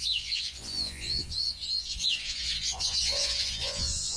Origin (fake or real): fake